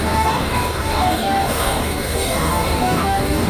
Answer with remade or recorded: remade